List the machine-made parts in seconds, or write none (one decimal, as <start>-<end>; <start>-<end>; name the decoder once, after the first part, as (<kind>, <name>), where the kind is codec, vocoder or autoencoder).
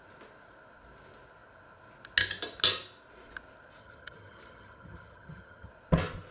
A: 3.8-5.7 (vocoder, HiFi-GAN)